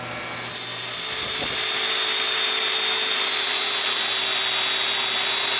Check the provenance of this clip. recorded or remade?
recorded